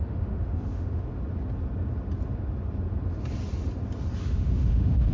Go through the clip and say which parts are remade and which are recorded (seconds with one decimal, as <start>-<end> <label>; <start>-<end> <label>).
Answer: 0.0-1.1 remade; 1.1-4.2 recorded; 4.2-5.1 remade